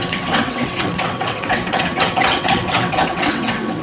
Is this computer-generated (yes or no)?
yes